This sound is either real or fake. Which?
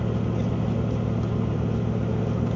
real